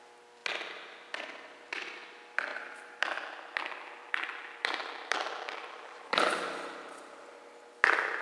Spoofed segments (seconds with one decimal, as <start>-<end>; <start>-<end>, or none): 2.5-7.3